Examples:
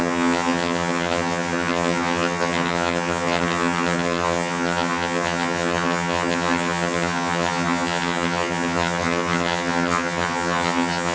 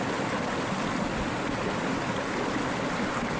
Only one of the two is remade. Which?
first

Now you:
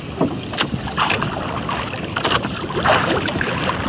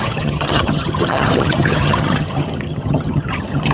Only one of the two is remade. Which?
second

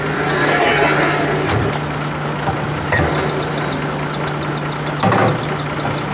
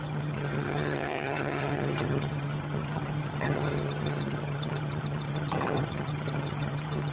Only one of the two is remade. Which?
second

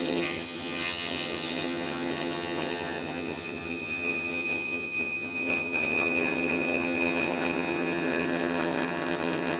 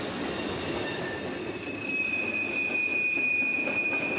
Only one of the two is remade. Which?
first